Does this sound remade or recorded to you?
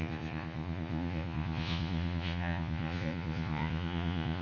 remade